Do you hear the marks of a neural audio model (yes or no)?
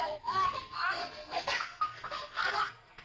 yes